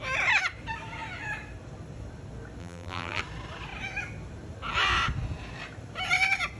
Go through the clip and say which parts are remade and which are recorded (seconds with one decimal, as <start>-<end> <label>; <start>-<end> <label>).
0.0-2.6 recorded; 2.6-3.2 remade; 3.2-6.6 recorded